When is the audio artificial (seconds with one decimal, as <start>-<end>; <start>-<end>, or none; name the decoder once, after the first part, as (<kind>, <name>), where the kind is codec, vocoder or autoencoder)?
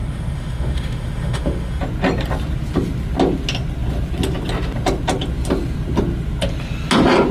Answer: 0.0-1.8 (autoencoder, DAC-VAE)